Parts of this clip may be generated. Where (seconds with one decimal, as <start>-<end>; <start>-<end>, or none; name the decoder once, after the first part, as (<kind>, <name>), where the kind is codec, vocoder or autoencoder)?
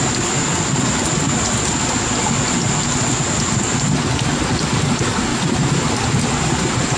none